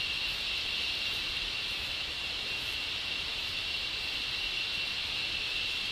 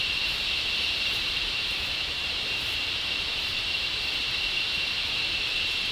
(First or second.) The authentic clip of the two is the first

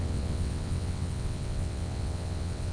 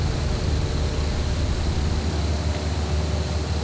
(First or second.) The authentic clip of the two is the second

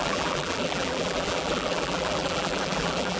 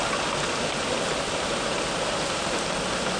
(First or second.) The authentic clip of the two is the second